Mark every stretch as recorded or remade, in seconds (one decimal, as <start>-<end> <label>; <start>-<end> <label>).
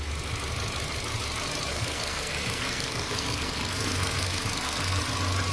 0.0-1.7 recorded; 1.7-5.0 remade; 5.0-5.5 recorded